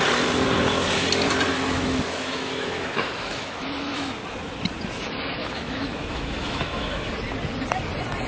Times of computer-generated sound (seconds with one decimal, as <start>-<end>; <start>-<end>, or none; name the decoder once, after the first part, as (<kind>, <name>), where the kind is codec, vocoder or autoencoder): 1.5-4.2 (autoencoder, DAC-VAE); 5.4-7.1